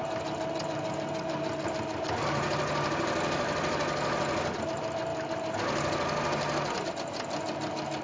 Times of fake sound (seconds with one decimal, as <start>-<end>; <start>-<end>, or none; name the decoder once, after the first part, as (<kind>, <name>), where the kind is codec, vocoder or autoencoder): none